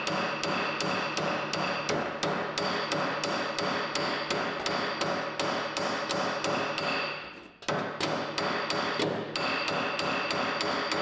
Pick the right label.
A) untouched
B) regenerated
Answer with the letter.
A